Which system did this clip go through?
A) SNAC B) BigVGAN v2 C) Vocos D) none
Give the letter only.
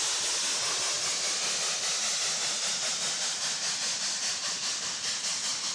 D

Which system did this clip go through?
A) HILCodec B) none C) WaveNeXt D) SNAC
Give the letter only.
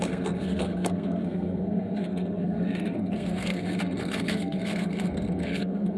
D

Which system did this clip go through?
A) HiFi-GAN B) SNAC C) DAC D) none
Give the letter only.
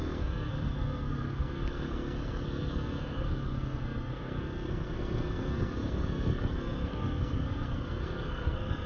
B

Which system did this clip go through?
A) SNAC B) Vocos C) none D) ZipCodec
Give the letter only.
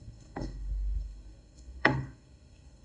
A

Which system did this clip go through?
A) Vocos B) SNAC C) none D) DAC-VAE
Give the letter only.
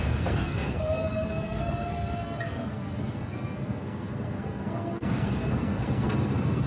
B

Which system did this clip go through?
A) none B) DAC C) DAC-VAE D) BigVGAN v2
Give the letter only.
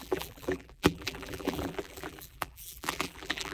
D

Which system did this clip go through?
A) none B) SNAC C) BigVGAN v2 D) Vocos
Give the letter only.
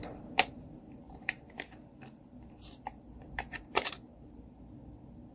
C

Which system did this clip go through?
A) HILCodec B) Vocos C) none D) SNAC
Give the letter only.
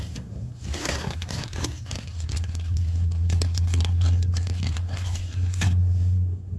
D